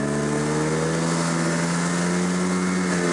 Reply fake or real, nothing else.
real